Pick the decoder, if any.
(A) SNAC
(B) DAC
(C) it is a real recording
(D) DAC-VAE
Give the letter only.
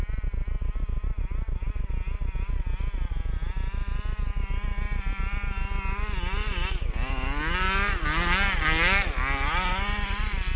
C